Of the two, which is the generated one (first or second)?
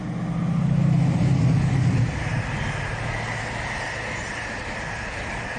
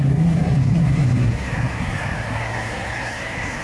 second